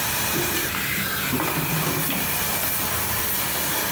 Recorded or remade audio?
recorded